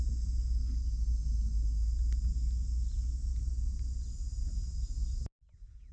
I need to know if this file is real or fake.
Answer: real